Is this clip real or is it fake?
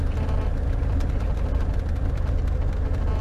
real